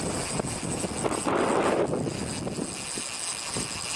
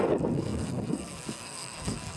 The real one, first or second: first